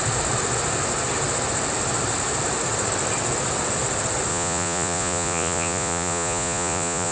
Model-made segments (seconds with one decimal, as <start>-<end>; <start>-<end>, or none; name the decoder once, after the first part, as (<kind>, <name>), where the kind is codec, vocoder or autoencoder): 4.3-7.1 (vocoder, Vocos)